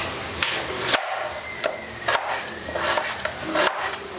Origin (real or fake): real